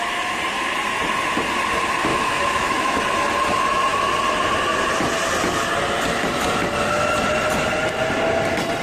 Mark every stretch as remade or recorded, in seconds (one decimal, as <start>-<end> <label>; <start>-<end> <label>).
0.0-2.1 recorded; 2.1-3.0 remade; 3.0-8.8 recorded